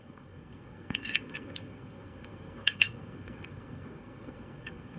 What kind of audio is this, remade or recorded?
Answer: remade